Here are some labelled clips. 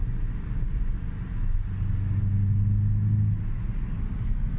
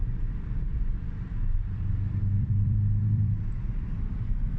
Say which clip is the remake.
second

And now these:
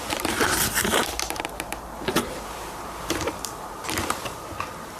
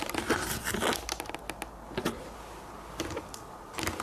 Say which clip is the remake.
first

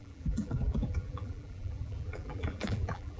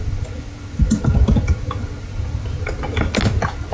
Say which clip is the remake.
first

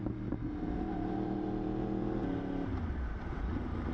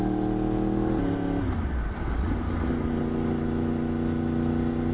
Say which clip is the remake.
first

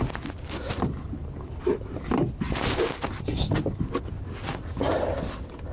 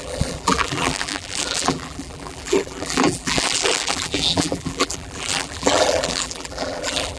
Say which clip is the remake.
second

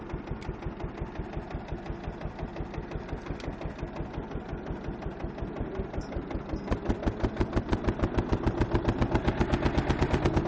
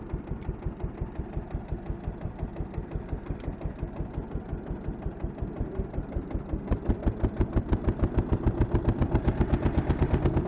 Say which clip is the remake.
second